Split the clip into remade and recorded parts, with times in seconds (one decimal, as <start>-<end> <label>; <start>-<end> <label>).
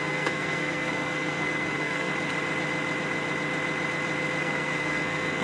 0.0-2.1 remade; 2.1-4.4 recorded; 4.4-5.4 remade